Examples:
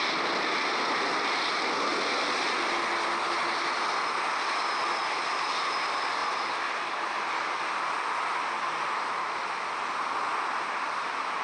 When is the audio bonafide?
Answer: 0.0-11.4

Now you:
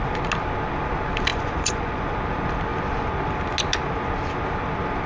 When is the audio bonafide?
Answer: 0.0-1.3; 2.2-5.1

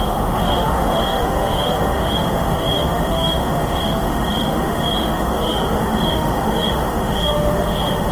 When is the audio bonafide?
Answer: none